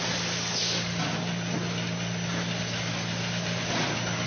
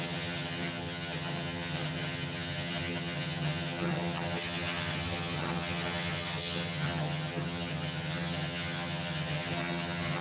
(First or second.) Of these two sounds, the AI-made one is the second